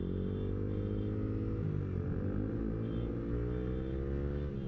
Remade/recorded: recorded